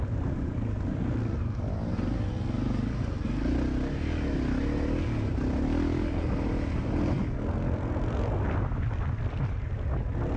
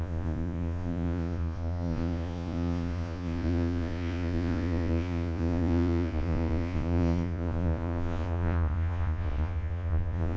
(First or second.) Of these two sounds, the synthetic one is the second